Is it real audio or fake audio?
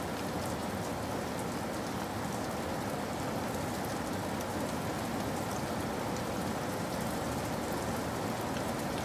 real